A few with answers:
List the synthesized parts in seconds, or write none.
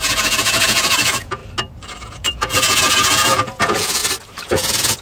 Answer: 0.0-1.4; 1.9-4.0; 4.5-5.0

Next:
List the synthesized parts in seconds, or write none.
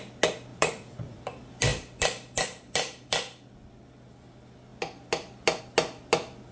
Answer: 0.5-1.2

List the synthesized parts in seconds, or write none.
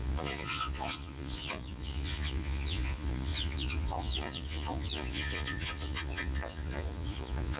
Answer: 0.0-7.6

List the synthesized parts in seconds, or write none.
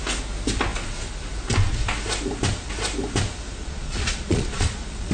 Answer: 3.6-5.1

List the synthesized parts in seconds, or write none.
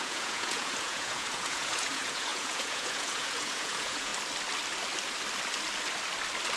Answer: 0.0-4.1